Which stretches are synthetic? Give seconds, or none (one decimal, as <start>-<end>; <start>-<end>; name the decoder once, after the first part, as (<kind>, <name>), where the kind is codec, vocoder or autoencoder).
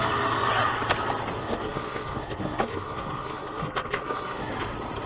1.4-4.5 (codec, SNAC)